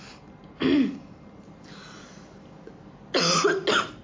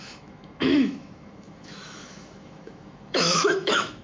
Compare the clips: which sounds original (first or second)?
first